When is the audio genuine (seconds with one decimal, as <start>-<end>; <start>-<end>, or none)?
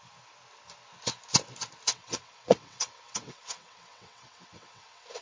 0.0-1.9